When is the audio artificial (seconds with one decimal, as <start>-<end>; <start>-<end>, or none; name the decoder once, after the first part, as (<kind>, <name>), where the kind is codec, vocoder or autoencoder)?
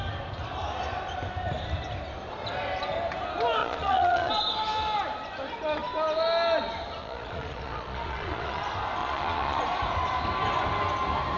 3.6-4.3 (vocoder, Vocos); 7.0-8.6; 9.0-9.6